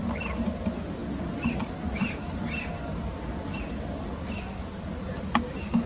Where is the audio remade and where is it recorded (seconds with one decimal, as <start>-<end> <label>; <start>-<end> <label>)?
0.0-5.9 recorded